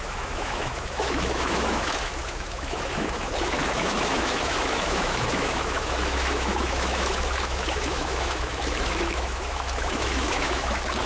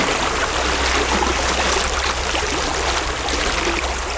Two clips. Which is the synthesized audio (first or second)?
first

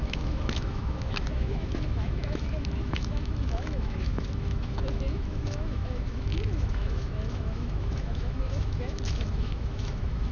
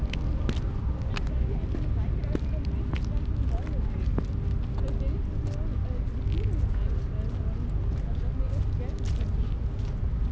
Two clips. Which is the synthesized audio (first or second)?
first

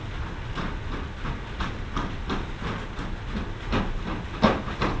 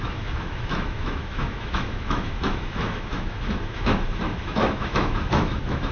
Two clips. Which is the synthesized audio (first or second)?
second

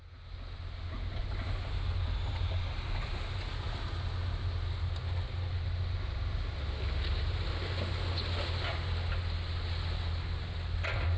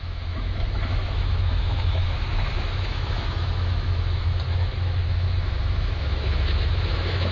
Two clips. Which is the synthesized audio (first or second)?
second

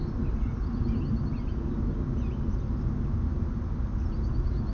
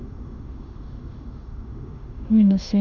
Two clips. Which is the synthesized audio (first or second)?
second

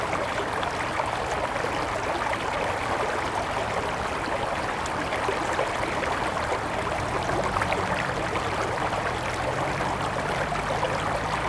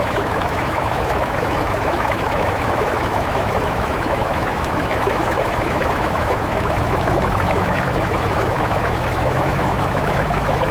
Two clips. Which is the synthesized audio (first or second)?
second